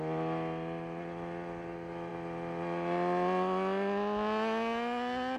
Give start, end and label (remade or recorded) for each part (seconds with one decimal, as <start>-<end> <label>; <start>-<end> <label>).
0.0-5.4 recorded

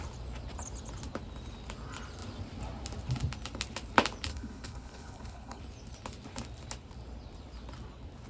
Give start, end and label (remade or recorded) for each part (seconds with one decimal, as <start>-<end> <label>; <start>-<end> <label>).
0.0-4.3 recorded; 4.3-5.6 remade; 5.6-8.3 recorded

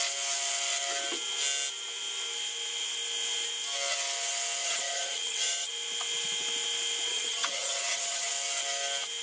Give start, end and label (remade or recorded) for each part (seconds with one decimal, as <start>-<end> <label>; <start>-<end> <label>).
0.0-4.6 recorded; 4.6-5.7 remade; 5.7-7.1 recorded; 7.1-8.3 remade; 8.3-9.2 recorded

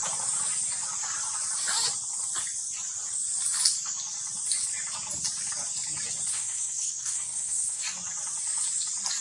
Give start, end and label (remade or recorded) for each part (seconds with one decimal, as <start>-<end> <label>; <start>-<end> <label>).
0.0-6.3 recorded; 6.3-7.8 remade; 7.8-9.2 recorded